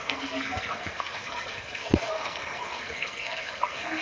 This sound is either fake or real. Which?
fake